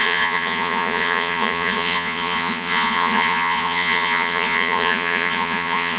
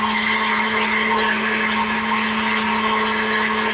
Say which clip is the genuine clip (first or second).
second